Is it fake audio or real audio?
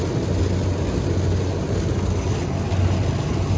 real